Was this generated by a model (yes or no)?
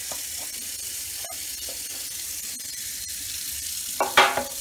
yes